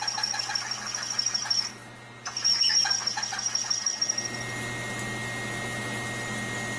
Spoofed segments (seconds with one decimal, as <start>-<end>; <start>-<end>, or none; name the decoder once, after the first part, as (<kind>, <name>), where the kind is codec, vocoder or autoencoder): none